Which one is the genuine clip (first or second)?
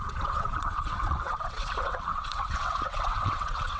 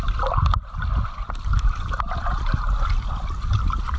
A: second